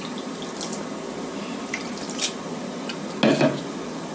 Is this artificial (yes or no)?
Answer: no